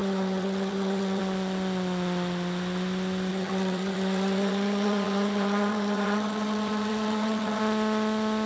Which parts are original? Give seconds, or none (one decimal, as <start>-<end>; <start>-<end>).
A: 1.2-3.3; 7.6-8.5